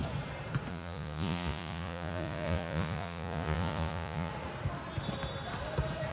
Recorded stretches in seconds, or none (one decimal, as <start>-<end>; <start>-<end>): 0.0-0.7; 4.3-6.1